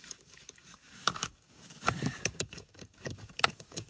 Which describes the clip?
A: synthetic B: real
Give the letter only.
A